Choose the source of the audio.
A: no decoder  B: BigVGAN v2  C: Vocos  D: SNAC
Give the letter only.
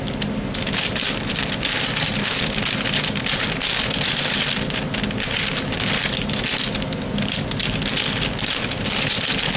A